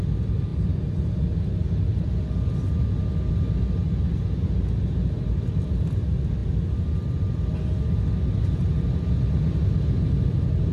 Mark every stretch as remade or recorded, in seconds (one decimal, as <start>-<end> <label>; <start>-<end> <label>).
0.0-10.7 recorded